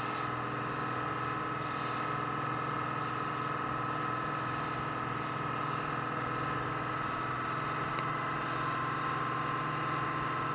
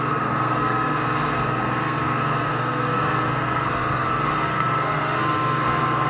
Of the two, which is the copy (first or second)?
second